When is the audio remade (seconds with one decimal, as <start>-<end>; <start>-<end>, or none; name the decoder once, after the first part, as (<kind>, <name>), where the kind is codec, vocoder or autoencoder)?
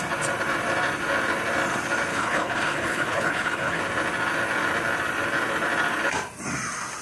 2.1-3.8 (codec, HILCodec)